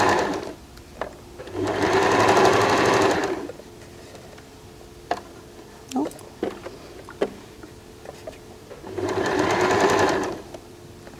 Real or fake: fake